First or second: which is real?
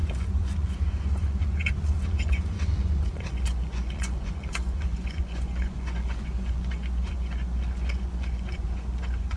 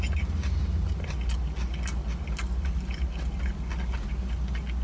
second